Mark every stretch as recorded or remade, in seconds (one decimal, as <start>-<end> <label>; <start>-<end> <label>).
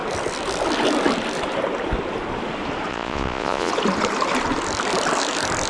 0.0-2.9 recorded; 2.9-3.7 remade; 3.7-5.7 recorded